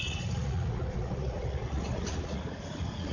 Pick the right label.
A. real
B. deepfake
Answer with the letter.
B